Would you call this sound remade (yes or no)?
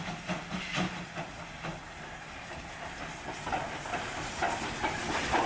no